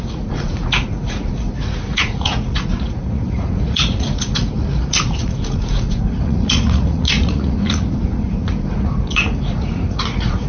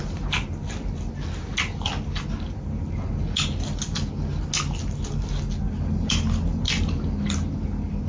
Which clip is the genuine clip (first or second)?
second